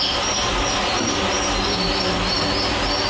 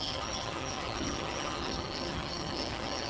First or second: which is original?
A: first